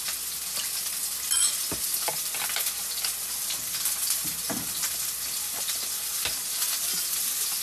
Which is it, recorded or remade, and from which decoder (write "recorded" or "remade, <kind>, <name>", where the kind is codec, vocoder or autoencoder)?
recorded